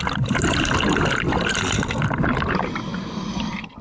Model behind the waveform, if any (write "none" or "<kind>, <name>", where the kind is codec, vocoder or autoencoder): none